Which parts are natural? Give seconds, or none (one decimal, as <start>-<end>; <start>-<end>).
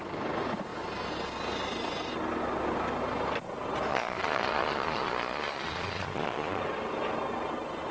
0.0-3.9; 6.6-7.9